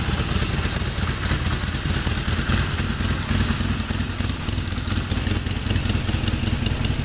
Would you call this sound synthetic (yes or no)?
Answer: no